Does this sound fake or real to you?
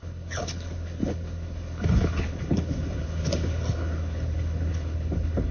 fake